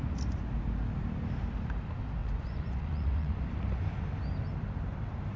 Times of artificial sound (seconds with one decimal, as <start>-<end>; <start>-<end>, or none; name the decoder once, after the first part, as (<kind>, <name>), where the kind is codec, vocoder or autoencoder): 2.2-3.4 (vocoder, Vocos)